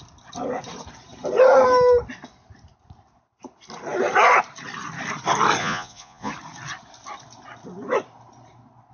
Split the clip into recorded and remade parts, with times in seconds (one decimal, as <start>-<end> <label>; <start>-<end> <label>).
0.0-5.6 recorded; 5.6-6.3 remade; 6.3-8.9 recorded